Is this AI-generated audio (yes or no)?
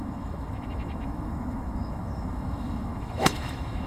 yes